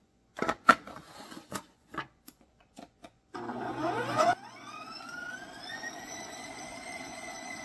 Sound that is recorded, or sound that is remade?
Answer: remade